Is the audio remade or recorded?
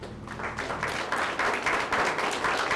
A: recorded